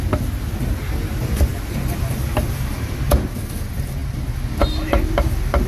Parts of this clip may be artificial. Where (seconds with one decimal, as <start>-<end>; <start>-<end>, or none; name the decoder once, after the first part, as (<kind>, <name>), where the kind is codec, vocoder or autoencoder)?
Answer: none